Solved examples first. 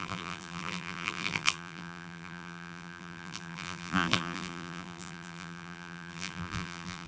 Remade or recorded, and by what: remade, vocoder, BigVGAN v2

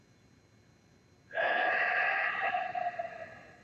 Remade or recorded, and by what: recorded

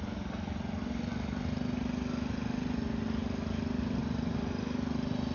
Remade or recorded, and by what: recorded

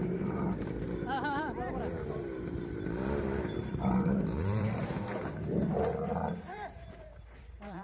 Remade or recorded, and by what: remade, vocoder, BigVGAN v2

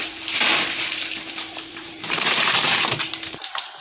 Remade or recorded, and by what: remade, vocoder, BigVGAN v2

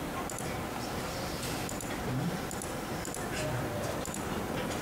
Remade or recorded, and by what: recorded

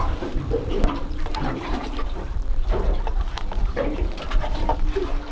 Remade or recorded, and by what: remade, vocoder, BigVGAN v2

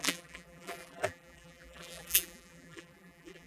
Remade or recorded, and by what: remade, vocoder, BigVGAN v2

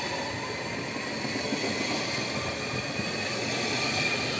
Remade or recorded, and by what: recorded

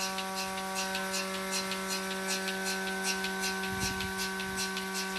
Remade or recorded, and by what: recorded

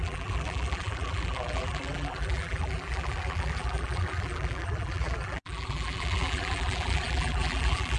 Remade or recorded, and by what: remade, vocoder, BigVGAN v2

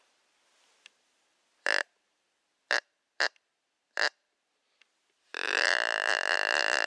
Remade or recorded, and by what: recorded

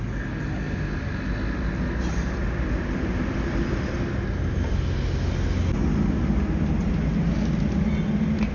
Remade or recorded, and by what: recorded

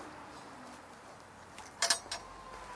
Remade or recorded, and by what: recorded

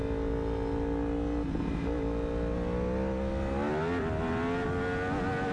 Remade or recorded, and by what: recorded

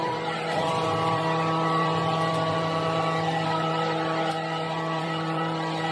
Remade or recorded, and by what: remade, vocoder, BigVGAN v2